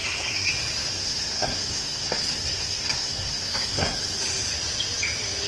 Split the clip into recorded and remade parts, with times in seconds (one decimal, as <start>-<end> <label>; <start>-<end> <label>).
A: 0.0-0.5 remade; 0.5-0.9 recorded; 0.9-4.2 remade; 4.2-5.5 recorded